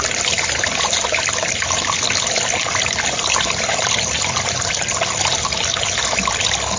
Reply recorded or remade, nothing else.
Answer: recorded